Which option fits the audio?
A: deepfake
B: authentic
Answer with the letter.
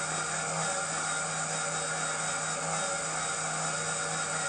B